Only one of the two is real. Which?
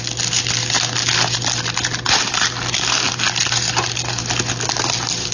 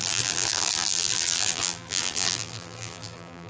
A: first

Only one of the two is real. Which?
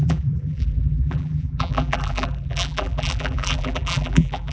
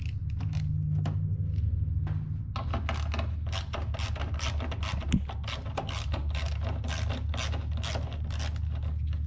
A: second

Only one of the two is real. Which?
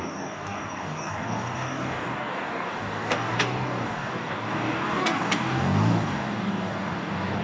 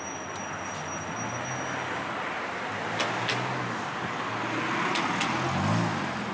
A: second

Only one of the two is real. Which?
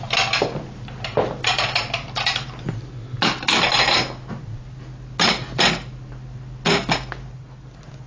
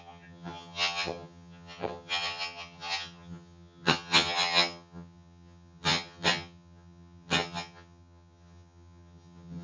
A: first